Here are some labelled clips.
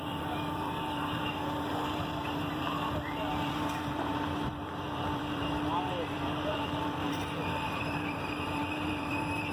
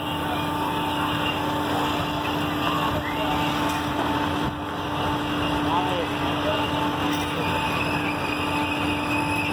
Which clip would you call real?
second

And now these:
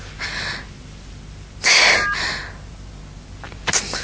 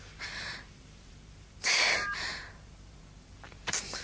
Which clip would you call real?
first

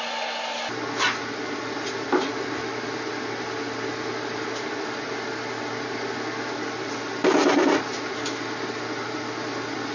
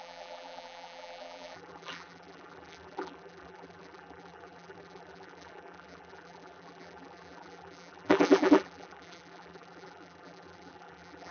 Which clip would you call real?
first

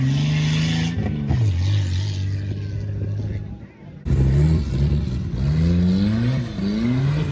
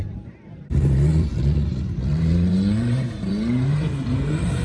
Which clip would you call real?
first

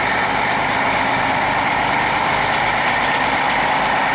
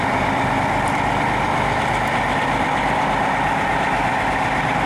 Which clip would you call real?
second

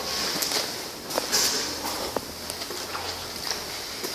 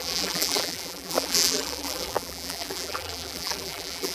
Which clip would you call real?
first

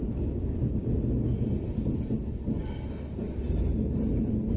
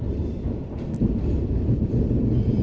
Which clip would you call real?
first